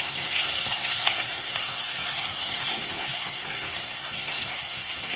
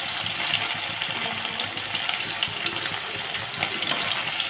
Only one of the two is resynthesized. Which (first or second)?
first